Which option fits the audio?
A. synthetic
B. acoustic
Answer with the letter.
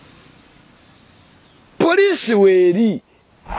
B